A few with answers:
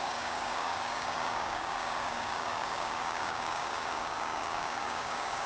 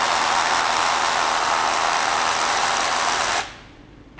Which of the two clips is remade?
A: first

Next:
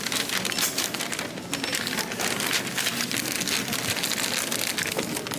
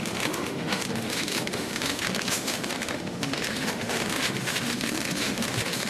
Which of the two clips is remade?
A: second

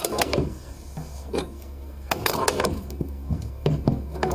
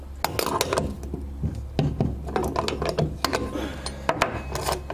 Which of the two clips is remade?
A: first